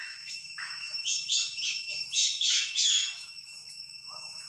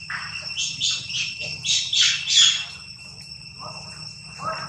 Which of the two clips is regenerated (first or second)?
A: first